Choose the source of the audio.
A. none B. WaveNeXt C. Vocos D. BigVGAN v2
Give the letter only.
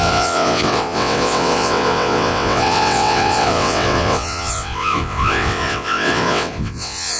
B